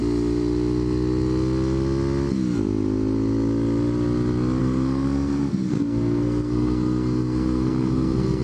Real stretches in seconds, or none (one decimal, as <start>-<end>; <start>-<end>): 0.0-4.6